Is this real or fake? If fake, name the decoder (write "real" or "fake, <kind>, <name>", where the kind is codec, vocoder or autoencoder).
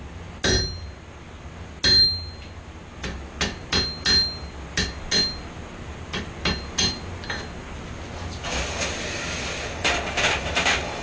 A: real